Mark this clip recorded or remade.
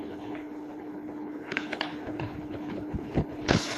remade